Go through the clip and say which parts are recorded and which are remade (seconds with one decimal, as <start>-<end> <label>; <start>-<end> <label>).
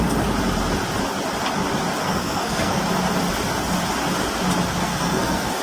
0.0-2.0 recorded; 2.0-2.8 remade; 2.8-4.7 recorded; 4.7-5.6 remade